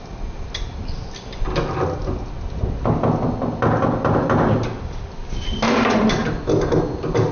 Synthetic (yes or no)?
no